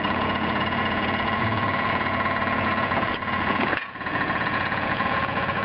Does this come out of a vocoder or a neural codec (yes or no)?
yes